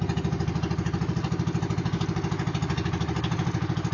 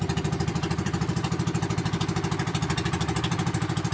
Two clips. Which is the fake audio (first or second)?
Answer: second